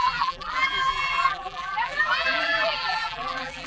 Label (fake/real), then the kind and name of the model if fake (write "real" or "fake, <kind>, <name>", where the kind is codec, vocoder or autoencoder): fake, vocoder, BigVGAN v2